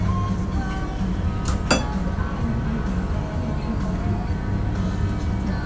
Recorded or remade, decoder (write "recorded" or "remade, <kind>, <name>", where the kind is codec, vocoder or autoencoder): recorded